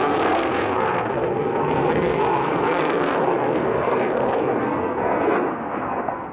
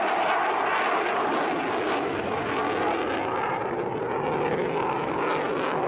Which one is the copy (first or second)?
first